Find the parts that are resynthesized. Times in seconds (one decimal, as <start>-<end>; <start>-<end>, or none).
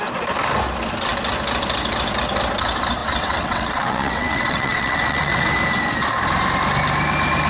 3.0-5.5